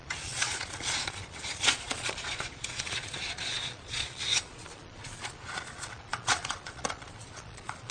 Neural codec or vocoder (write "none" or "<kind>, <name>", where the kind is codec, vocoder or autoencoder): vocoder, Vocos